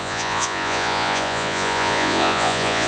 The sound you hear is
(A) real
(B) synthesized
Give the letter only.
B